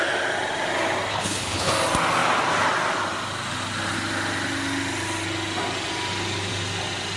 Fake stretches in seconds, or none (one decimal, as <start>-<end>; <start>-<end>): 1.1-1.7